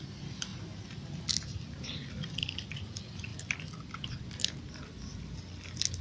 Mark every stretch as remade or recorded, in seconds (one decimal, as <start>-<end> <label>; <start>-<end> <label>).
0.0-6.0 recorded